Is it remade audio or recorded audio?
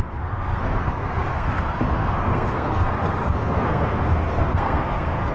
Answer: remade